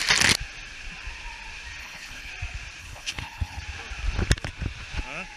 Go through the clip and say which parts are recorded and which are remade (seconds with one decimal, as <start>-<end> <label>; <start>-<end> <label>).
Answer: 0.0-1.8 recorded; 1.8-2.3 remade; 2.3-2.8 recorded; 2.8-3.6 remade; 3.6-5.4 recorded